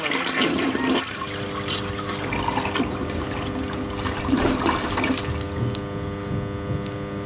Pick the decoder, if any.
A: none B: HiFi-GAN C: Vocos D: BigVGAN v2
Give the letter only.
A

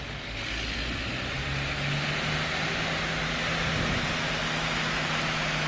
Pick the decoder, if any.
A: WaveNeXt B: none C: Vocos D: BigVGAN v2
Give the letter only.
B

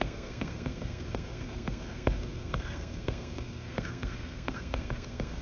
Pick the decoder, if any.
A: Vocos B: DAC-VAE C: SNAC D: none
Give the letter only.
C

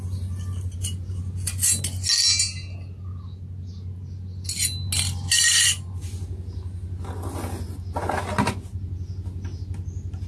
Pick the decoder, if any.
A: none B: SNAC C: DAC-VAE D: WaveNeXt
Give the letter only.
A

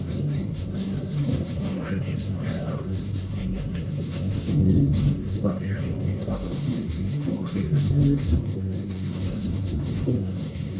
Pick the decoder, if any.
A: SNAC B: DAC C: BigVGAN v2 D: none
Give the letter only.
A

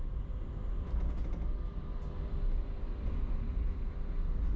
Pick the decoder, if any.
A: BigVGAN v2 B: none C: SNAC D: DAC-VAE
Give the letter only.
B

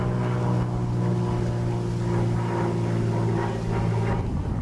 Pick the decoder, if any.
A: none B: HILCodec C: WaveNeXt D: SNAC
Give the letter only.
A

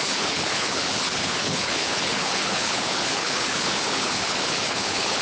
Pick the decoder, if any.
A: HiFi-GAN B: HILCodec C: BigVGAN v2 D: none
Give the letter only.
B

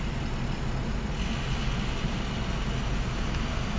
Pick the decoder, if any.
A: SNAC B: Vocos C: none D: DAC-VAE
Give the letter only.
C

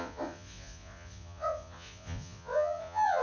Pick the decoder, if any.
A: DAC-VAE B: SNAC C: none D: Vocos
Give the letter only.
D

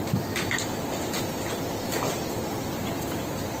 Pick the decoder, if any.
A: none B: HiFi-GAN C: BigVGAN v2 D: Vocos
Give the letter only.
A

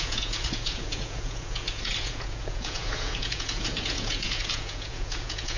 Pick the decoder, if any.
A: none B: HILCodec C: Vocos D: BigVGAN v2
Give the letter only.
C